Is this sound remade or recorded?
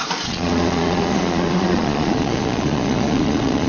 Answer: remade